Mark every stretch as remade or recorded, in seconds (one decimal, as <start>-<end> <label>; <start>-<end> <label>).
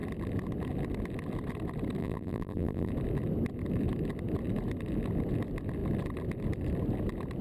0.0-2.0 recorded; 2.0-2.9 remade; 2.9-7.4 recorded